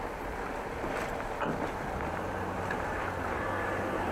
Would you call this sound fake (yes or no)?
no